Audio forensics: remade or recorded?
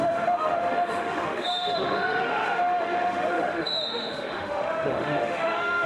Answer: remade